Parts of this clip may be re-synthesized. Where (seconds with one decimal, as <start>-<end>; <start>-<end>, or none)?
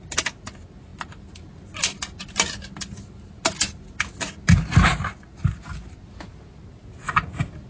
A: none